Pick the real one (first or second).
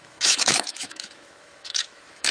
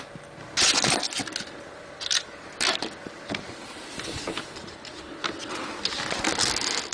second